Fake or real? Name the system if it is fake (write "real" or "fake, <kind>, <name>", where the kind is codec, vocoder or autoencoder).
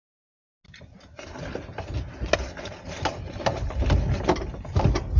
real